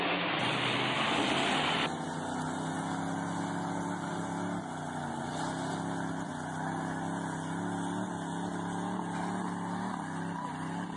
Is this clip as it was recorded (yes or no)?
yes